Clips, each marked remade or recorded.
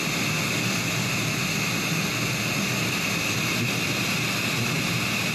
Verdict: recorded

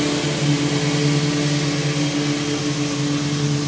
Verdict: recorded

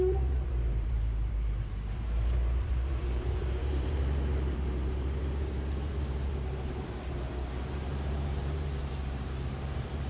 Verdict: remade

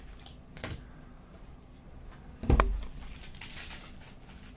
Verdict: recorded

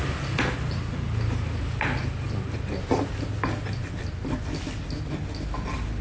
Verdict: recorded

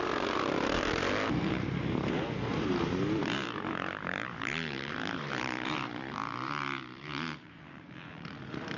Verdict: remade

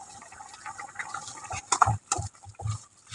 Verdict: recorded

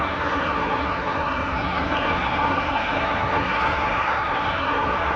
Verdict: remade